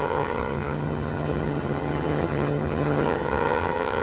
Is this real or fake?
fake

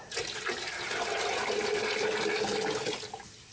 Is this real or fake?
real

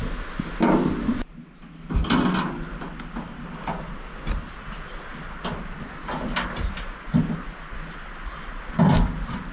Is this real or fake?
real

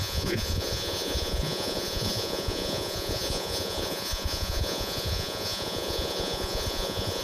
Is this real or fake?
fake